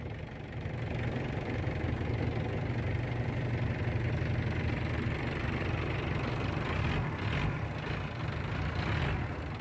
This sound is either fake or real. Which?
real